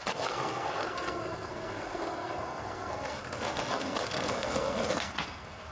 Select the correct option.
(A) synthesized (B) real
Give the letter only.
A